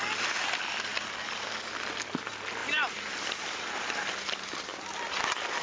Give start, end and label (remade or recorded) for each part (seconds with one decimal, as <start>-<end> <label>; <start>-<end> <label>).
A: 0.0-5.6 recorded